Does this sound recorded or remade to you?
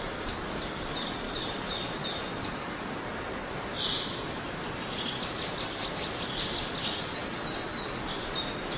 recorded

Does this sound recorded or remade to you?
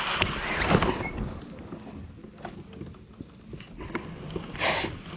recorded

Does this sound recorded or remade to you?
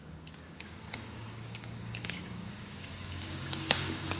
remade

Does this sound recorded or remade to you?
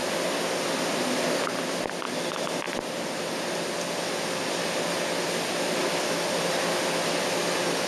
recorded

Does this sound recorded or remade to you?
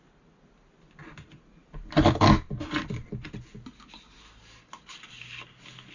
recorded